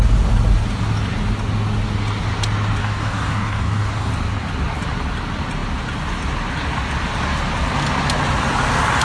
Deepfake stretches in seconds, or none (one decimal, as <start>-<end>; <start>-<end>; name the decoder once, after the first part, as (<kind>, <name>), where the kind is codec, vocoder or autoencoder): 2.8-4.1 (codec, DAC)